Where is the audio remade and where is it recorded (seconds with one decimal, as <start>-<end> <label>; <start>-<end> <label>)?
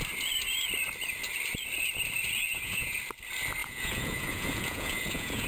0.0-2.5 recorded; 2.5-3.0 remade; 3.0-3.6 recorded; 3.6-5.5 remade